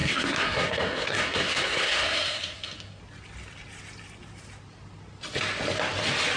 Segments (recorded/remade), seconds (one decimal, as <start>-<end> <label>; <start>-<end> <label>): 0.0-3.0 remade; 3.0-6.4 recorded